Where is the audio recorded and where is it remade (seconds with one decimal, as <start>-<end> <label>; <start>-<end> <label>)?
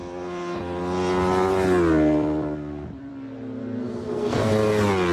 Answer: 0.0-3.6 recorded; 3.6-4.5 remade; 4.5-5.1 recorded